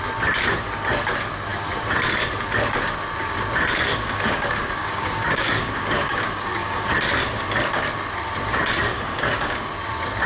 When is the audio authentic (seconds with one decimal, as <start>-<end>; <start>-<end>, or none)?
0.0-3.9; 6.9-8.9; 9.7-10.3